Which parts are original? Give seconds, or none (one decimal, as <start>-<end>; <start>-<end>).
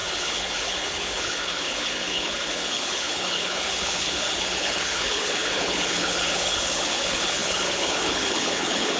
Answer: none